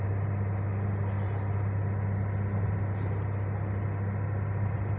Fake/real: real